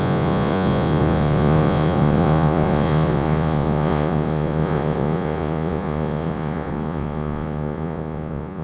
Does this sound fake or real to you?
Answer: fake